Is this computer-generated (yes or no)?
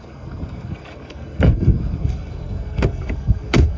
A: yes